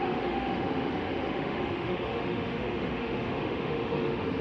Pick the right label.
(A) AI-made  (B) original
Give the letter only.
A